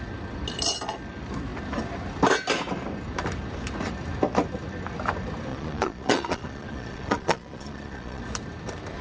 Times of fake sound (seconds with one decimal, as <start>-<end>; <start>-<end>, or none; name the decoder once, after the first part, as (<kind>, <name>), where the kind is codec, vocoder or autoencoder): 5.5-8.2 (vocoder, Vocos)